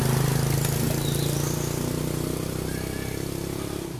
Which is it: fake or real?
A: real